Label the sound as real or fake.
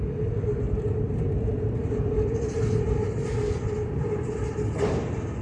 real